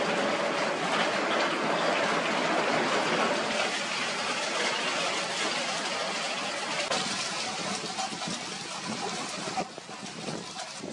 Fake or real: real